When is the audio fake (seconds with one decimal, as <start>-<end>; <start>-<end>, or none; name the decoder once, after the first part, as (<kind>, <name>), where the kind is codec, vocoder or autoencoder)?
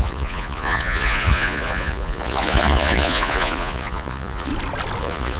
0.0-4.5 (vocoder, Vocos); 5.0-5.4